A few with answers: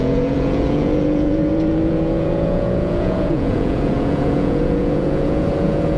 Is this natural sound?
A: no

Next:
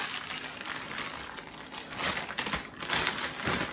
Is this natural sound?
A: yes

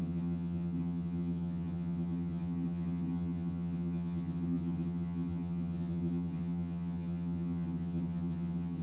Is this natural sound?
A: no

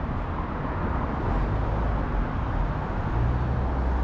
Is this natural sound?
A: yes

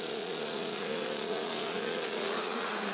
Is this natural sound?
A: no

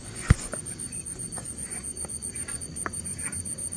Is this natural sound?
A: no